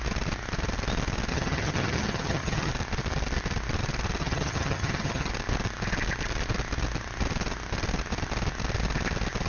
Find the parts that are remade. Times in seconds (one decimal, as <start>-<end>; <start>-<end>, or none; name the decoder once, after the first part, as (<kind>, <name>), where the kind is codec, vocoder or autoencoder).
1.3-2.7 (vocoder, HiFi-GAN); 4.2-5.3

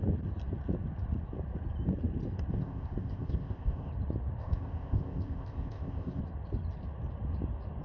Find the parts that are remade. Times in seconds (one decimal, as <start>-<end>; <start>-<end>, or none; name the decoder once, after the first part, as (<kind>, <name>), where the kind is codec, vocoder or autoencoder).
2.5-3.9 (codec, ZipCodec); 4.4-6.2

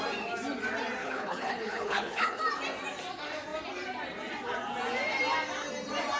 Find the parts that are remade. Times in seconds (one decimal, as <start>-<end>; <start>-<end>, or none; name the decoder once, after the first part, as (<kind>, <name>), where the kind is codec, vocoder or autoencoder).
1.0-2.4 (codec, HILCodec)